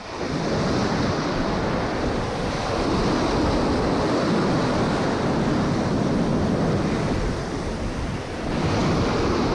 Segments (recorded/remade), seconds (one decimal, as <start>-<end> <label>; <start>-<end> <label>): 0.0-9.5 recorded

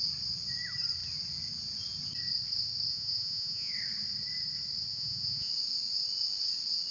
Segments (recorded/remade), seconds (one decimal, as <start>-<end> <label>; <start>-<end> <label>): 0.0-2.9 recorded; 2.9-3.7 remade; 3.7-4.9 recorded; 4.9-5.5 remade; 5.5-6.9 recorded

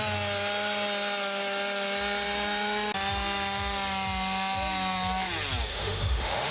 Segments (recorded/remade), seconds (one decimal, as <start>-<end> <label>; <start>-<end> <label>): 0.0-5.7 recorded; 5.7-6.5 remade

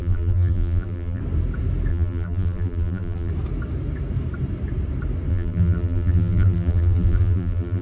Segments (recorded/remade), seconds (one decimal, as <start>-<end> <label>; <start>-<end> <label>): 0.0-1.2 remade; 1.2-1.9 recorded; 1.9-3.3 remade; 3.3-5.3 recorded; 5.3-7.8 remade

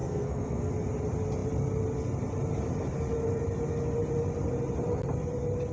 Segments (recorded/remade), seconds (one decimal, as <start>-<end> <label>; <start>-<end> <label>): 0.0-0.7 remade; 0.7-5.7 recorded

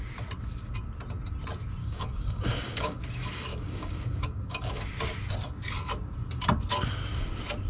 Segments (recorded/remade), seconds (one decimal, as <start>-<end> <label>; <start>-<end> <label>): 0.0-1.8 recorded; 1.8-3.0 remade; 3.0-3.5 recorded; 3.5-4.8 remade; 4.8-7.7 recorded